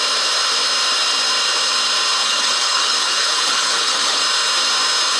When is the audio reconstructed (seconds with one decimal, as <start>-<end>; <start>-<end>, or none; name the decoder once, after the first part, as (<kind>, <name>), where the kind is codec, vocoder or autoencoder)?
2.2-4.2 (codec, HILCodec)